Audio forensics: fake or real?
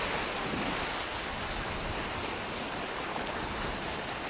real